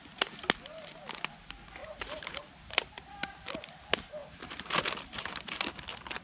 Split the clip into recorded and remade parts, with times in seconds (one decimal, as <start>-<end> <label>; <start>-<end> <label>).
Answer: 0.0-1.8 recorded; 1.8-2.4 remade; 2.4-4.2 recorded; 4.2-5.7 remade; 5.7-6.2 recorded